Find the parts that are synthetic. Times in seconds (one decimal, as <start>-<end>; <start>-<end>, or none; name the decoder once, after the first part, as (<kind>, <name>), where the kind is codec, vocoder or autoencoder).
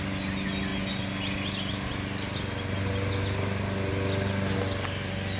none